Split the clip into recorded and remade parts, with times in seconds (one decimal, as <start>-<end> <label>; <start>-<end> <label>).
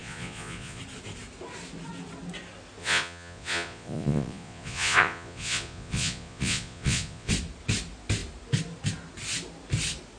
0.0-0.8 remade; 0.8-2.8 recorded; 2.8-7.3 remade; 7.3-10.2 recorded